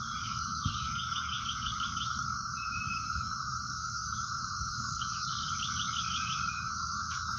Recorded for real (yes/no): no